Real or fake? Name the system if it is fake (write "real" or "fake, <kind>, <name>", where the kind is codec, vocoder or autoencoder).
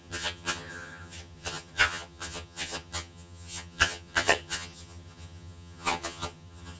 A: fake, vocoder, HiFi-GAN